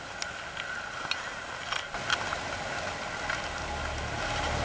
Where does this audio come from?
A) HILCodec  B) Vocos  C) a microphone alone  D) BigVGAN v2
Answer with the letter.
C